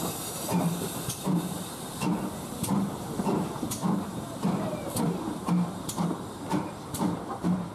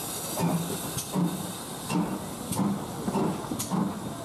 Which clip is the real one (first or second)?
second